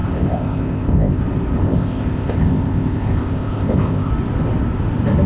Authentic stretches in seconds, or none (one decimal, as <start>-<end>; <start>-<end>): 1.2-1.6; 4.1-5.3